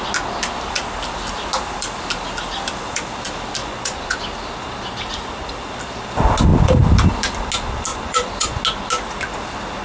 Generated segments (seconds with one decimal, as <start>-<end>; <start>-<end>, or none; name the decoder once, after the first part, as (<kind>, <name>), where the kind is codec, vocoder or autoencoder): 3.6-4.2 (vocoder, Vocos); 7.9-8.6